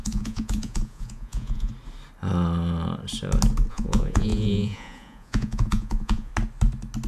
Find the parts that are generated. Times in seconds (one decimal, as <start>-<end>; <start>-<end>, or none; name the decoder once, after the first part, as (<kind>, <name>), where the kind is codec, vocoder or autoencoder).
0.0-1.7 (vocoder, Vocos); 3.7-6.3